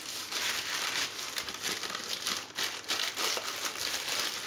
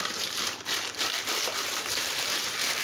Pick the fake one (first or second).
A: second